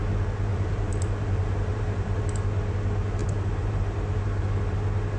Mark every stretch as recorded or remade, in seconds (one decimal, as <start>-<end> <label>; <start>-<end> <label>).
0.0-0.5 recorded; 0.5-2.2 remade; 2.2-3.2 recorded; 3.2-4.4 remade; 4.4-5.2 recorded

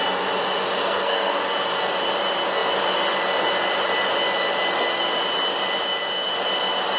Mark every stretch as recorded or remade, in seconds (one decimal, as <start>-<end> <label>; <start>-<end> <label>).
0.0-0.8 recorded; 0.8-1.4 remade; 1.4-7.0 recorded

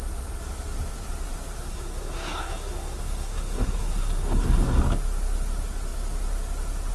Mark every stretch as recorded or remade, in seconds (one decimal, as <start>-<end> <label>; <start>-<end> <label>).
0.0-1.6 recorded; 1.6-4.8 remade; 4.8-6.9 recorded

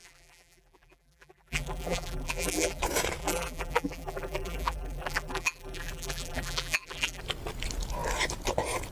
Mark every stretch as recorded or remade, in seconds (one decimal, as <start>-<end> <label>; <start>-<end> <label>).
0.0-2.8 remade; 2.8-3.2 recorded; 3.2-7.2 remade; 7.2-8.9 recorded